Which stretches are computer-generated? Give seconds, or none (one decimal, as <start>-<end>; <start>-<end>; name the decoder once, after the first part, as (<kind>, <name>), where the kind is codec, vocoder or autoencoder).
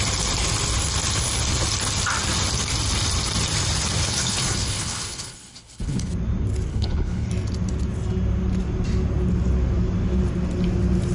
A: 4.0-6.1 (codec, HILCodec); 6.7-7.3